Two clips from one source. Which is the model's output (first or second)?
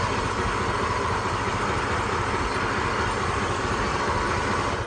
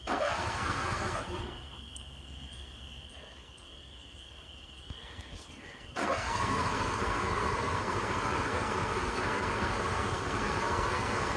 second